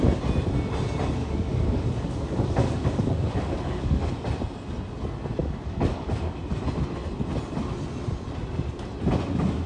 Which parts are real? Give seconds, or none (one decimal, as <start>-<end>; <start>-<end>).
0.0-1.2; 4.1-5.4; 6.4-9.7